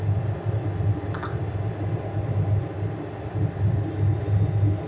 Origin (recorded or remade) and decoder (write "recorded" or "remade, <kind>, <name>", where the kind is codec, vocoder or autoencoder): recorded